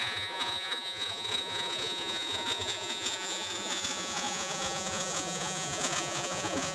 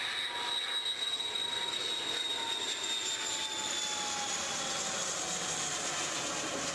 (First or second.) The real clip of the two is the second